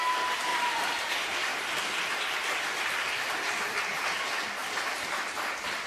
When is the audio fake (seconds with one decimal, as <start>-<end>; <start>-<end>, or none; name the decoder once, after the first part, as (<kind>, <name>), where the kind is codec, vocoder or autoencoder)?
0.5-1.1 (vocoder, BigVGAN v2)